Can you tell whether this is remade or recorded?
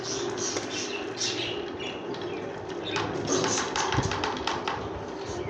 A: recorded